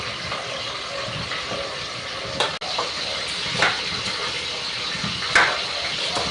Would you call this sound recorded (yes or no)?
yes